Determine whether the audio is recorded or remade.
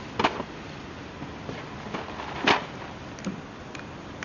recorded